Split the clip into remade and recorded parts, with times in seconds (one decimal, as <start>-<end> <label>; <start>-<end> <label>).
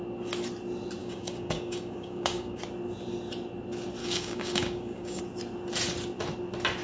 0.0-1.0 recorded; 1.0-2.6 remade; 2.6-4.0 recorded; 4.0-5.2 remade; 5.2-6.8 recorded